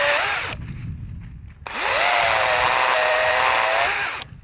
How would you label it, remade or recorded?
recorded